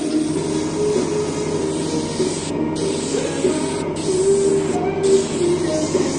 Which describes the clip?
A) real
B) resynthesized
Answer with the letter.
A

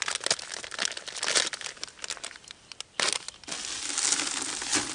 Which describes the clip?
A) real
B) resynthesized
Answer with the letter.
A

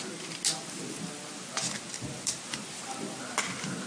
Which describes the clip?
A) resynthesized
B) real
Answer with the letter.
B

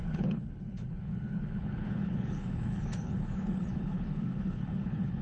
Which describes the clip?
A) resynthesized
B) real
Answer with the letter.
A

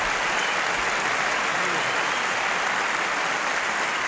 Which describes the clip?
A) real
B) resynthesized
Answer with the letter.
A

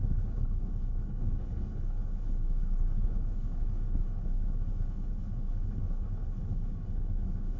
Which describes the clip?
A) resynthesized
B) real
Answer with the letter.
A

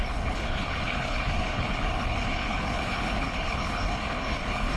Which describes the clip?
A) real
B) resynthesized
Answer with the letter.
B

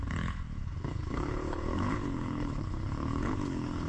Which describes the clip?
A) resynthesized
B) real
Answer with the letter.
A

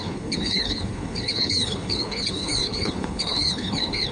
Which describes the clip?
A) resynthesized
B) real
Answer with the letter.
A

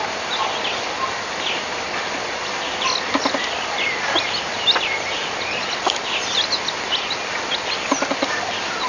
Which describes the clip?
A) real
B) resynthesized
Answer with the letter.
A